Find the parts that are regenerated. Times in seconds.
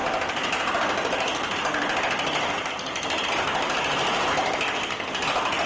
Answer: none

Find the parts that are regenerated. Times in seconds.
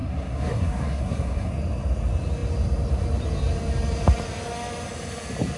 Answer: 0.0-1.5 (codec, SNAC)